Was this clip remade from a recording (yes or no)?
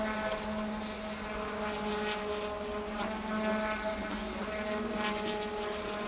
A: no